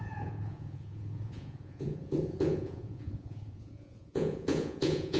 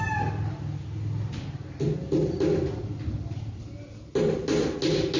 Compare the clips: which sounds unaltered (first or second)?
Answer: second